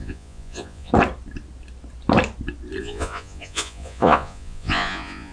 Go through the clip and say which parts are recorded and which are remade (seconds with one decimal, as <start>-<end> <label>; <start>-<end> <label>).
0.0-0.9 remade; 0.9-2.8 recorded; 2.8-5.3 remade